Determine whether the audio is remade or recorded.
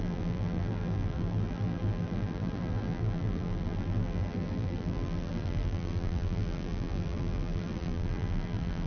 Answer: remade